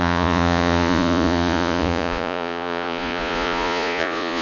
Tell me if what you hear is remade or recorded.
remade